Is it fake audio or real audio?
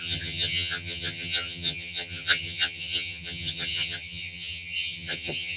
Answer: fake